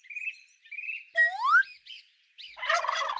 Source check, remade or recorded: recorded